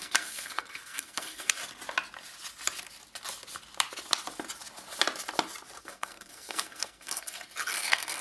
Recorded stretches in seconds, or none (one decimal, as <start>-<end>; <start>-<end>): 1.6-5.8